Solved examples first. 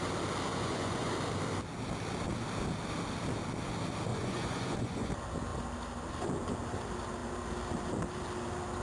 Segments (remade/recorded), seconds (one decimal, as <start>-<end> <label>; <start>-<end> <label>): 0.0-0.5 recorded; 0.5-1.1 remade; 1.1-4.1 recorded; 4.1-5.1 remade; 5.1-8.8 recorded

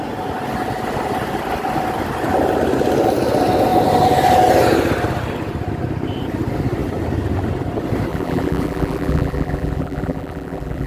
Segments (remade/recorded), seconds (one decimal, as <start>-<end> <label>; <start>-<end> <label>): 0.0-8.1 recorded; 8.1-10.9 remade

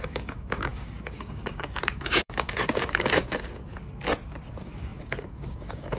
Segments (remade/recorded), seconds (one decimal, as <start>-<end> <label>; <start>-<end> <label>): 0.0-3.7 remade; 3.7-4.5 recorded; 4.5-6.0 remade

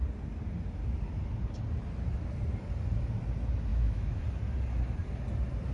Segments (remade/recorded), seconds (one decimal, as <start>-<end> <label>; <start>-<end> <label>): 0.0-3.7 recorded; 3.7-4.2 remade; 4.2-5.7 recorded

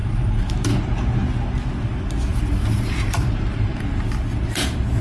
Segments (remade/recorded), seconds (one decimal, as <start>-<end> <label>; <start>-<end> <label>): 0.0-0.5 remade; 0.5-2.3 recorded; 2.3-5.0 remade

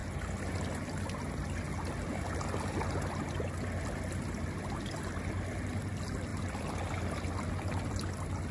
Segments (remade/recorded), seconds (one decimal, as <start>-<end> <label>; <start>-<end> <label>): 0.0-8.5 recorded

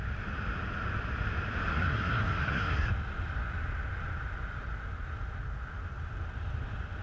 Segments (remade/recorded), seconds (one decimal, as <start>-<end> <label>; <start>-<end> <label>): 0.0-1.7 recorded; 1.7-2.9 remade; 2.9-7.0 recorded

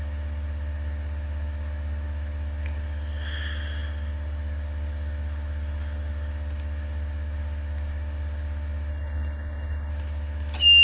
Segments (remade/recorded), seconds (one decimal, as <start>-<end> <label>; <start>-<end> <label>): 0.0-8.9 recorded; 8.9-9.9 remade; 9.9-10.8 recorded